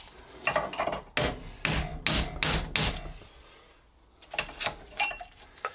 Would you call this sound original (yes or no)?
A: yes